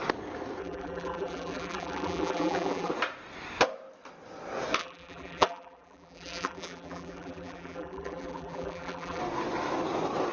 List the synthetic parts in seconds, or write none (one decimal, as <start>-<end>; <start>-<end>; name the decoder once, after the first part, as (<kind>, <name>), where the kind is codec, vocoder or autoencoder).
0.6-2.9 (vocoder, BigVGAN v2); 4.8-9.2